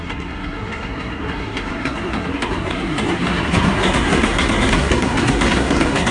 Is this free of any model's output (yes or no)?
no